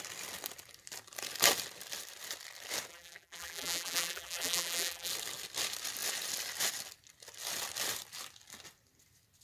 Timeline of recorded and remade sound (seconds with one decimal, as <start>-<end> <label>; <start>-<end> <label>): 0.0-2.9 recorded; 2.9-5.1 remade; 5.1-9.4 recorded